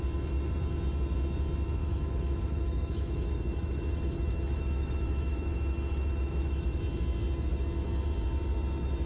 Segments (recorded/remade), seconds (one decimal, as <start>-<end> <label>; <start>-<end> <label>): 0.0-1.8 recorded; 1.8-6.8 remade; 6.8-9.1 recorded